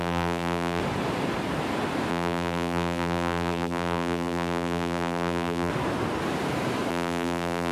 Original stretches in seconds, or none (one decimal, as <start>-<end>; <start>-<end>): 0.8-2.1; 5.7-6.9